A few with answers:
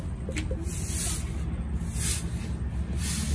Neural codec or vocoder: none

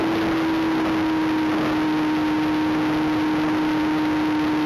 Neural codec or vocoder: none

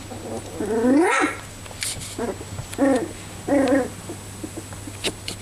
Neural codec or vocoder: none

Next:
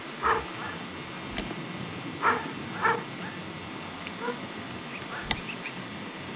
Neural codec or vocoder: none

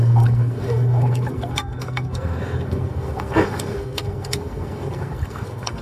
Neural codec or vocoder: codec, SNAC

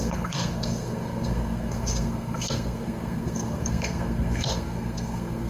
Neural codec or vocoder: codec, SNAC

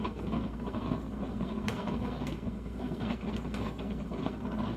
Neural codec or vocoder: codec, SNAC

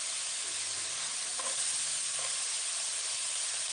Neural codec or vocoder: none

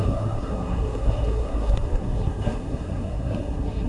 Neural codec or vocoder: codec, SNAC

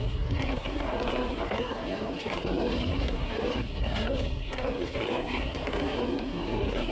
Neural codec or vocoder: codec, SNAC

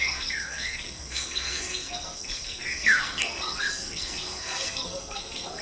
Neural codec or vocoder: codec, SNAC